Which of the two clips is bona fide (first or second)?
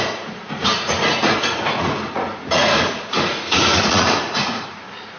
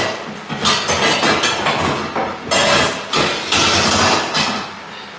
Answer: second